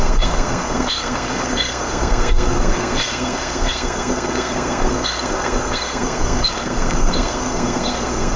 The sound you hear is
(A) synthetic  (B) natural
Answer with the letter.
A